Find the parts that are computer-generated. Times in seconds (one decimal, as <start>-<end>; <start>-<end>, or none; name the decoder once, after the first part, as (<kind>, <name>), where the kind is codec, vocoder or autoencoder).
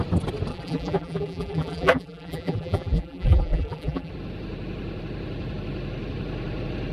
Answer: 0.5-4.1 (vocoder, BigVGAN v2)